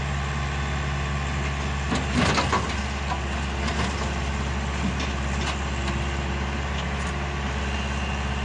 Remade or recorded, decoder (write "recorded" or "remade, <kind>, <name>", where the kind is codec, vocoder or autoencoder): recorded